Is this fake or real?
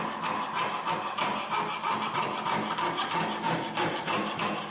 real